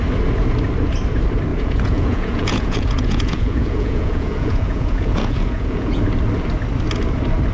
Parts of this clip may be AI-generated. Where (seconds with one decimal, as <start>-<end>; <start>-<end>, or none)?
1.5-6.0

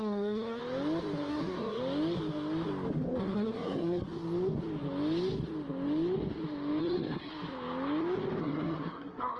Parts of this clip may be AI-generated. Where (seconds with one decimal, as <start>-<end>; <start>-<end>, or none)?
0.0-0.6; 1.3-1.8; 3.2-4.1; 6.8-7.3; 8.4-9.4

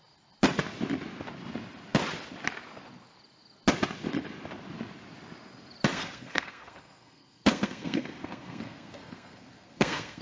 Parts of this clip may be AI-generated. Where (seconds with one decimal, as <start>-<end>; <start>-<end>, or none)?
5.9-10.2

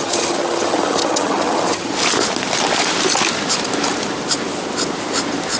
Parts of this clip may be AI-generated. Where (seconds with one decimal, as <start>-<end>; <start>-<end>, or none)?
0.0-1.9

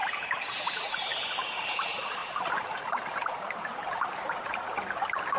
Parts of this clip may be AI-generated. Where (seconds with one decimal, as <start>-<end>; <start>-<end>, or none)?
0.0-1.3; 2.2-4.2

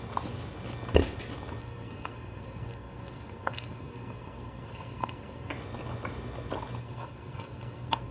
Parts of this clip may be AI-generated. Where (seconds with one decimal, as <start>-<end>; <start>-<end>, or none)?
1.6-5.5; 6.8-8.1

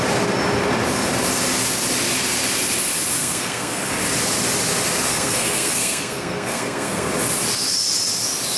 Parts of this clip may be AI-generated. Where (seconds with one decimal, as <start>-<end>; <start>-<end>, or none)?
3.2-3.9; 5.1-7.1